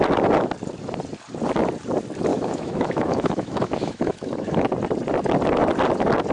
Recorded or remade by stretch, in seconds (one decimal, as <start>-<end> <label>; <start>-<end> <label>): 0.0-2.3 recorded; 2.3-4.7 remade; 4.7-6.3 recorded